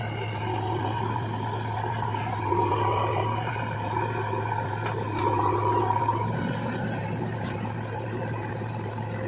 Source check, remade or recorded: recorded